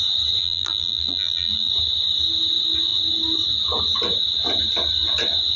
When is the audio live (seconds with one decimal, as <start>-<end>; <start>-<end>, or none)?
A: 0.0-0.4; 1.7-5.6